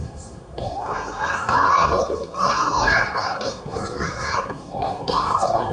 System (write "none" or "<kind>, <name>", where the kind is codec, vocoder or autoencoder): codec, SNAC